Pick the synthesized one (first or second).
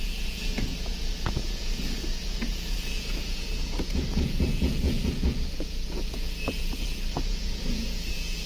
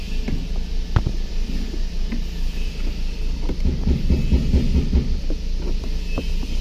first